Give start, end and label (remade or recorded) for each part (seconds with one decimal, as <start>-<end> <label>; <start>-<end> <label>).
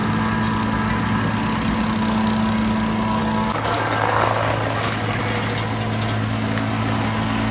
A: 0.0-3.2 recorded; 3.2-5.2 remade; 5.2-7.5 recorded